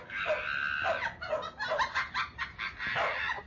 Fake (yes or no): no